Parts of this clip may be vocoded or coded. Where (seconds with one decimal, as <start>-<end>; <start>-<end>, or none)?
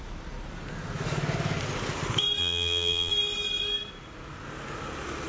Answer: 2.4-3.1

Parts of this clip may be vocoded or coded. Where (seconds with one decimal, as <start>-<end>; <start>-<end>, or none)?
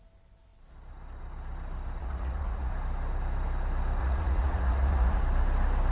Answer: 2.0-2.7; 4.0-5.2